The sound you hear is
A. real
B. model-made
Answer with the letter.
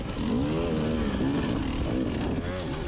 A